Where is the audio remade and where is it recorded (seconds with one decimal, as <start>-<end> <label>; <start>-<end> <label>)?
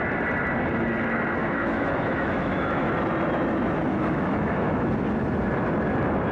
0.0-1.4 recorded; 1.4-2.9 remade; 2.9-3.9 recorded; 3.9-4.9 remade; 4.9-6.3 recorded